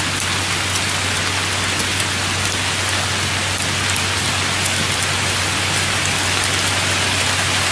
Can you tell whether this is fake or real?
real